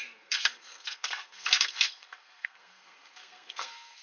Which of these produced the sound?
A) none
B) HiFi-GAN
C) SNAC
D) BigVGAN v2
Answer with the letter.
C